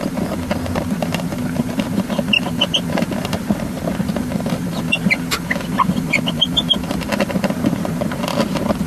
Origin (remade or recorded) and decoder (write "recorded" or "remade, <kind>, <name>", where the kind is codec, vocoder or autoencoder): remade, vocoder, BigVGAN v2